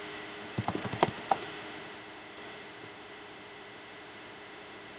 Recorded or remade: remade